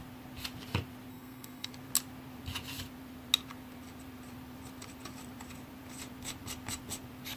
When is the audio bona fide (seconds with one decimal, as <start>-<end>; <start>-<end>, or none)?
0.0-1.1; 1.7-7.4